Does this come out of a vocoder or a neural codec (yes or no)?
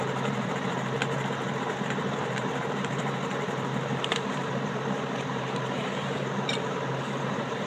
yes